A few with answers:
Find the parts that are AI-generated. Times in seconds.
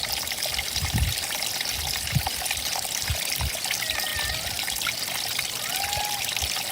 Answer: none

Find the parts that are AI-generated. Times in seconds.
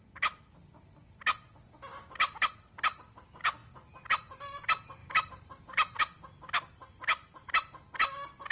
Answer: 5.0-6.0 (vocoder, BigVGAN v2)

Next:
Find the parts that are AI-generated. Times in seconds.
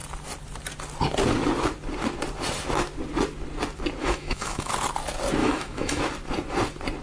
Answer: 4.0-4.7 (autoencoder, DAC-VAE); 5.4-6.0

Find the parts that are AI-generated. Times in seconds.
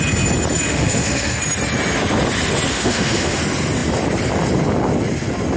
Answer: 0.7-1.4 (autoencoder, DAC-VAE); 2.7-3.4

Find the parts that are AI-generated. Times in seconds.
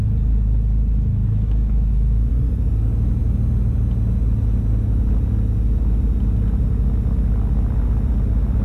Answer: 1.2-2.3 (autoencoder, DAC-VAE)